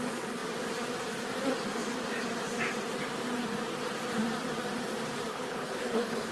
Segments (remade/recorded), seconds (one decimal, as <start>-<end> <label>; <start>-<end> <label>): 0.0-5.3 recorded; 5.3-6.3 remade